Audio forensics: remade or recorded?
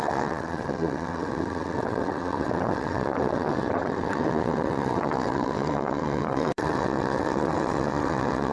remade